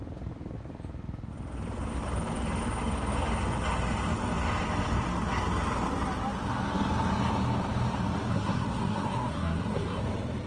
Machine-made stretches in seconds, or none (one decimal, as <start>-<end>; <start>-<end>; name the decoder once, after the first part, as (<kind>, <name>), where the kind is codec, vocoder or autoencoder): 8.3-10.0 (codec, SNAC)